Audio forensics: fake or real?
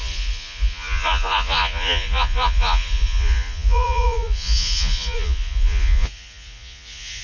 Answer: fake